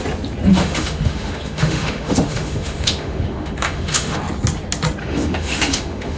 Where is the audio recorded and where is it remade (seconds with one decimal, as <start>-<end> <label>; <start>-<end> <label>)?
0.0-0.5 recorded; 0.5-4.2 remade; 4.2-5.0 recorded; 5.0-6.2 remade